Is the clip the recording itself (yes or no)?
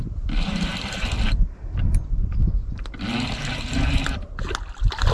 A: yes